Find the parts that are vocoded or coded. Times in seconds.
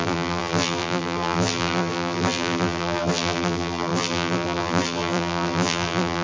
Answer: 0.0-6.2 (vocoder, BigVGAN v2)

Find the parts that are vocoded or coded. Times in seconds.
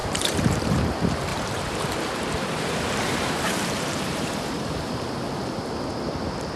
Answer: 0.0-0.8 (vocoder, BigVGAN v2); 1.3-4.9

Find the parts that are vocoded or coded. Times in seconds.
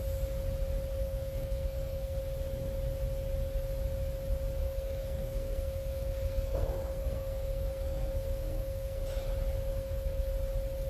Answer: 1.0-2.2 (codec, SNAC); 4.6-9.0; 9.7-10.3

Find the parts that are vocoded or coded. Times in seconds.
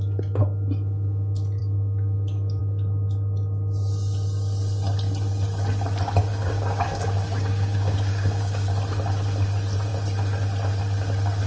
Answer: 1.6-2.6 (codec, DAC); 6.3-8.7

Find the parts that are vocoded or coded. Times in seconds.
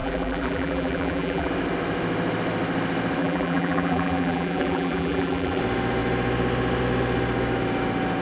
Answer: 0.0-1.5 (vocoder, BigVGAN v2); 3.2-5.6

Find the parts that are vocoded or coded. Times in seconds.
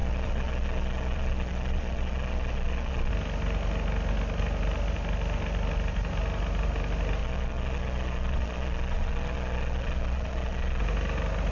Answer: 0.0-3.1 (vocoder, Vocos); 7.2-10.8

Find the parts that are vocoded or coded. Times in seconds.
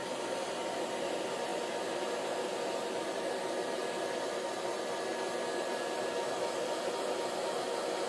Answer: none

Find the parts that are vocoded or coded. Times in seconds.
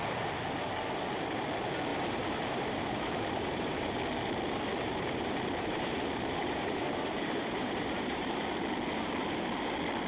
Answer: 1.9-3.9 (vocoder, BigVGAN v2); 4.7-8.4